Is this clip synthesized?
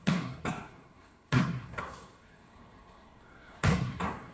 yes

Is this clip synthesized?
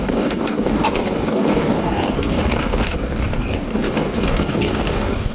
yes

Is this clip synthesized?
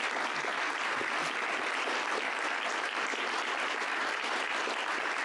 no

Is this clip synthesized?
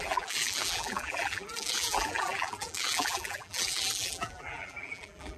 yes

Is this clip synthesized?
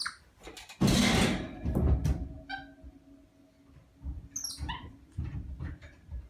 no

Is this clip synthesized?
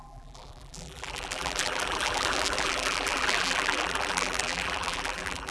yes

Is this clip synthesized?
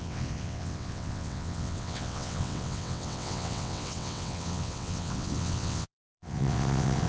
yes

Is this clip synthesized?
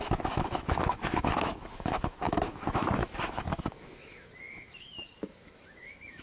yes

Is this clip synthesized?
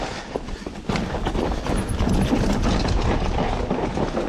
no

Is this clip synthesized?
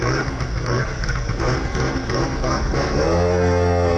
yes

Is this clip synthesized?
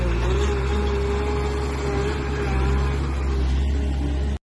no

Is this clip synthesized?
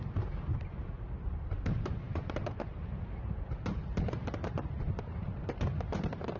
yes